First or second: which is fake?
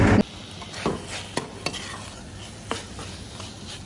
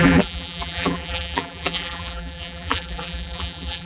second